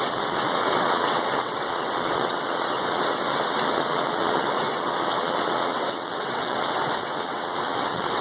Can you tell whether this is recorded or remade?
remade